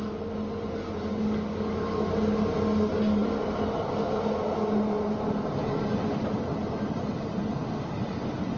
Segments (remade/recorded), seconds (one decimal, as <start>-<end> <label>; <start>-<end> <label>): 0.0-1.1 recorded; 1.1-2.1 remade; 2.1-8.6 recorded